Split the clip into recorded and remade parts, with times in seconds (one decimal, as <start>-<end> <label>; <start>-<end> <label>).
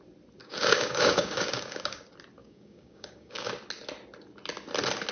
0.0-0.4 recorded; 0.4-2.0 remade; 2.0-2.4 recorded; 2.4-3.5 remade; 3.5-5.1 recorded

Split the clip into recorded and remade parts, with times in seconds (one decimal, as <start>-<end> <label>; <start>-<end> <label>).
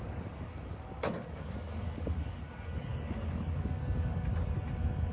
0.0-4.3 remade; 4.3-5.1 recorded